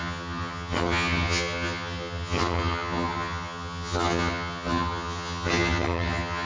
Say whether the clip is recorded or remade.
remade